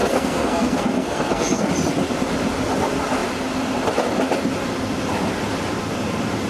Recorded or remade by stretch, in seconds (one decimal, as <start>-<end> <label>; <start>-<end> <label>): 0.0-1.7 remade; 1.7-6.5 recorded